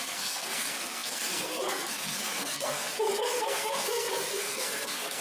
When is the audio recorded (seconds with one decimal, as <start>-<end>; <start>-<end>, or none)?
none